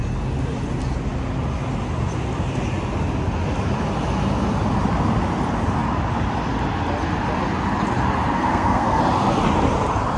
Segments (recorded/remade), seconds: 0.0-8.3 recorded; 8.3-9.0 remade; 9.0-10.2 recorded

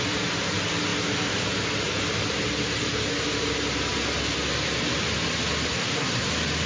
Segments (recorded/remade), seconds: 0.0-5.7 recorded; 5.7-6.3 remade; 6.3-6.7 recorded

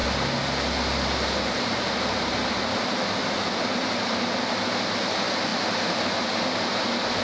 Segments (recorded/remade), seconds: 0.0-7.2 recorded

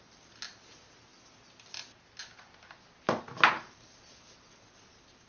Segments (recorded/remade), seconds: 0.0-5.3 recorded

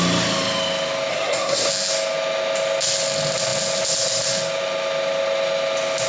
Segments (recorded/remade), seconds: 0.0-1.1 recorded; 1.1-1.7 remade; 1.7-6.1 recorded